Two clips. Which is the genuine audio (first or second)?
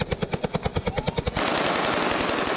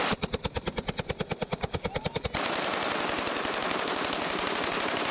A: first